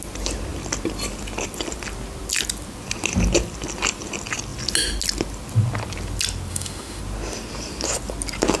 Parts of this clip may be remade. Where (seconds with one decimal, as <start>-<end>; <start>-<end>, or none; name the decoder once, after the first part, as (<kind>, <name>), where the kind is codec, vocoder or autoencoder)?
6.5-7.0 (autoencoder, DAC-VAE)